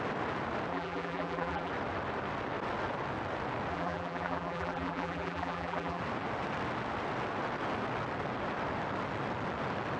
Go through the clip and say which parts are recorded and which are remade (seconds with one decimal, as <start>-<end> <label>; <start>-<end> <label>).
0.0-0.7 recorded; 0.7-1.7 remade; 1.7-3.7 recorded; 3.7-6.0 remade; 6.0-10.0 recorded